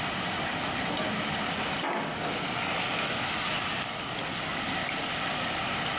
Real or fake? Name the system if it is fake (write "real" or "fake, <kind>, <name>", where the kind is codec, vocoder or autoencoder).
real